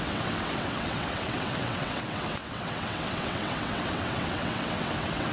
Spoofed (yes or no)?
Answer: yes